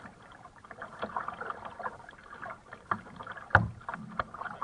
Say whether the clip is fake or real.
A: real